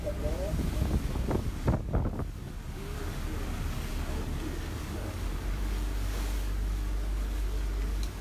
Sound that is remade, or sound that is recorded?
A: remade